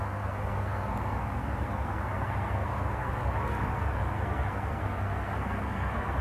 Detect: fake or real fake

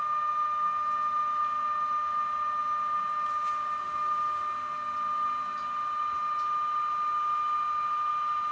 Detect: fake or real real